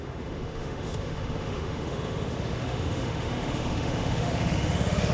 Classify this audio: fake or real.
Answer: fake